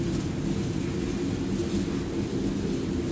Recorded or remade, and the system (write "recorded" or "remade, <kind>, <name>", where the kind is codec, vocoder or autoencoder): recorded